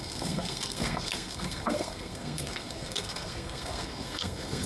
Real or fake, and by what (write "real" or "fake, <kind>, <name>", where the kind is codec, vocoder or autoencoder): fake, codec, SNAC